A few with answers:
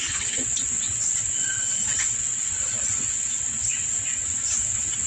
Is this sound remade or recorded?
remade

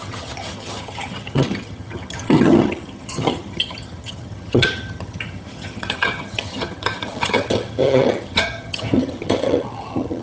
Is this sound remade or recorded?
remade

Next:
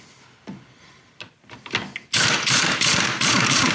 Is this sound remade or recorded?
recorded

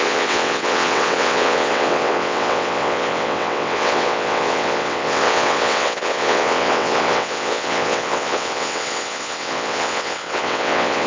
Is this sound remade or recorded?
remade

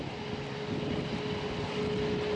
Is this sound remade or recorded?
recorded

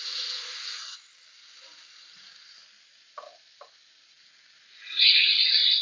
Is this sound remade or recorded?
recorded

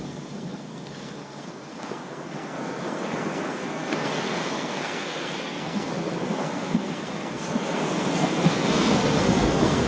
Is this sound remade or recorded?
remade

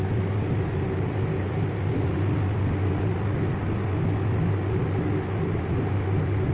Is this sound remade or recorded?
recorded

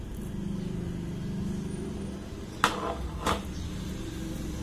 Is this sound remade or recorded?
recorded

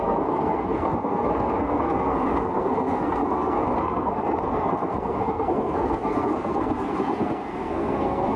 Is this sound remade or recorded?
remade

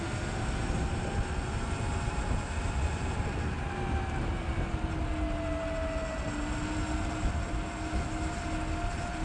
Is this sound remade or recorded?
recorded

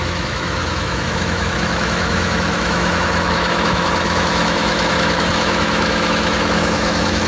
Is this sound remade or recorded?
remade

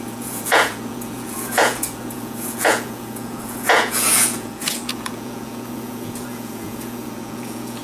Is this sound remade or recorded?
remade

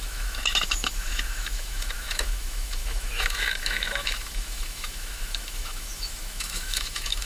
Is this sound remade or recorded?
remade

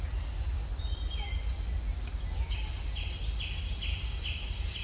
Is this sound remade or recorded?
recorded